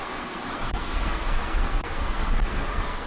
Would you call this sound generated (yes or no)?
yes